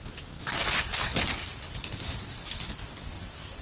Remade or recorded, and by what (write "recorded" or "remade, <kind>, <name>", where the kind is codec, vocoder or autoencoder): recorded